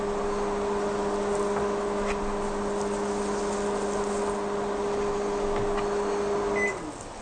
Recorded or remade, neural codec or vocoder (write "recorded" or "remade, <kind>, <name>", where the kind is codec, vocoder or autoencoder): recorded